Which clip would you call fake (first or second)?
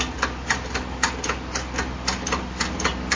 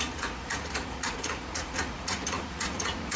second